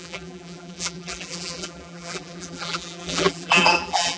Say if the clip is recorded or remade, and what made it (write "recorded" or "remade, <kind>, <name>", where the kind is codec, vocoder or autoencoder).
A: remade, vocoder, BigVGAN v2